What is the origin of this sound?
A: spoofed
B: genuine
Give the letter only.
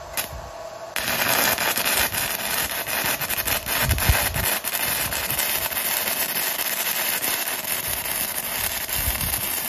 B